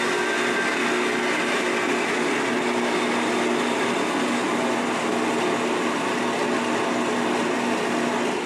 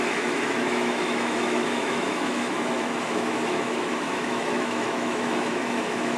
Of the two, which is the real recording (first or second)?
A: first